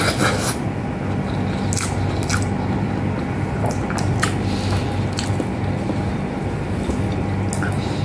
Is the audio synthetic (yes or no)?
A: no